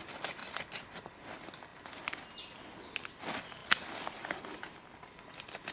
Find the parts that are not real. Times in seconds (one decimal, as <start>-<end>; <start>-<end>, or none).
0.4-1.2